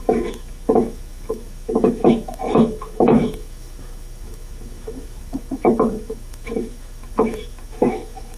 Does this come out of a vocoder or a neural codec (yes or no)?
yes